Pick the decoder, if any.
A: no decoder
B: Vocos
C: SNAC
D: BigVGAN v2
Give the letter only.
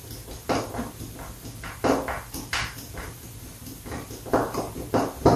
A